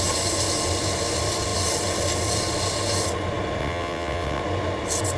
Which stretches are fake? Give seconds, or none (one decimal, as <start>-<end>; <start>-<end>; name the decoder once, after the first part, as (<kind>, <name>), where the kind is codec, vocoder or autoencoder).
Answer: 3.6-4.4 (vocoder, WaveNeXt)